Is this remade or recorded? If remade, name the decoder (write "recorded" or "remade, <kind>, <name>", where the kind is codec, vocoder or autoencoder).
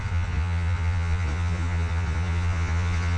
remade, vocoder, Vocos